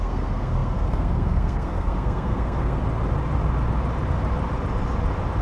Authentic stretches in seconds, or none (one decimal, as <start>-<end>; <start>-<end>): 2.8-5.4